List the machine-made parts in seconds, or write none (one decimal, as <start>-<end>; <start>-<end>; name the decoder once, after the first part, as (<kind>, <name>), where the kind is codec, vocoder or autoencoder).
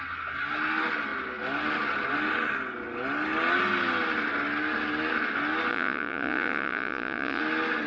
5.7-7.4 (vocoder, Vocos)